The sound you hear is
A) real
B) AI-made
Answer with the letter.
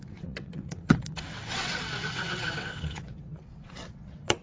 B